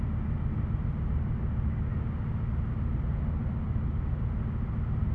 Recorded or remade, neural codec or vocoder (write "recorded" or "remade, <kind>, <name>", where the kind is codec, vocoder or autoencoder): recorded